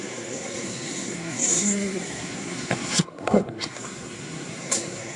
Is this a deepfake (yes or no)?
yes